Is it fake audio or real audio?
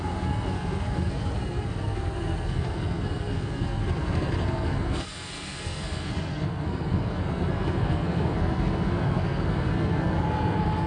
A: fake